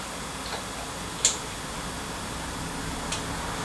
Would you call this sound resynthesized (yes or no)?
no